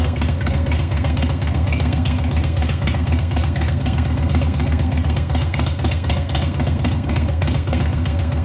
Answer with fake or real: fake